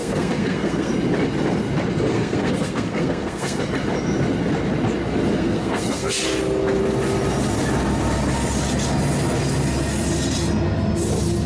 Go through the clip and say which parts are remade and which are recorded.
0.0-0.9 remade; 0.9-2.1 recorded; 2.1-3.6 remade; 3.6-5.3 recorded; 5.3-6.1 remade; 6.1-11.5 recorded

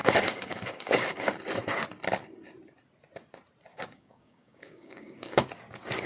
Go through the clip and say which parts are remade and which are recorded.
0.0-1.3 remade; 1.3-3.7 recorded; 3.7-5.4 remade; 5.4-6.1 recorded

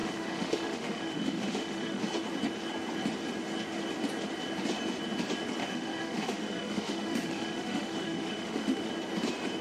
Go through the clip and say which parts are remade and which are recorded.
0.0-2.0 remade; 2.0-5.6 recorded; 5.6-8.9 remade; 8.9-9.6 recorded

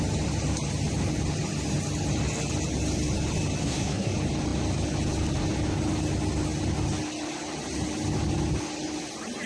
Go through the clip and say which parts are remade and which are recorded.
0.0-3.6 recorded; 3.6-4.1 remade; 4.1-9.5 recorded

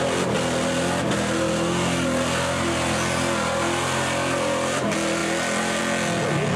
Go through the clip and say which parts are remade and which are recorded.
0.0-5.2 recorded; 5.2-5.8 remade; 5.8-6.6 recorded

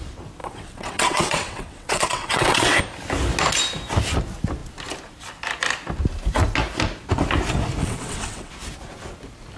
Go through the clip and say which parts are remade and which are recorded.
0.0-0.4 recorded; 0.4-2.8 remade; 2.8-7.8 recorded; 7.8-8.5 remade; 8.5-9.6 recorded

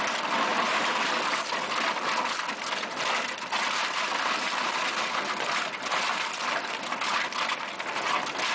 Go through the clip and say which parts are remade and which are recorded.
0.0-8.5 recorded